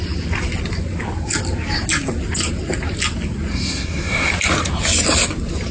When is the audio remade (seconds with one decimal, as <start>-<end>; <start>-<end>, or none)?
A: 3.5-4.3